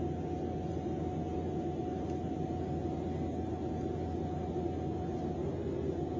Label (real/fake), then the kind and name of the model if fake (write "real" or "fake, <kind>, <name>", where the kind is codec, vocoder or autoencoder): real